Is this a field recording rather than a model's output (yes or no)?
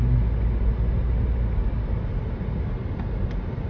yes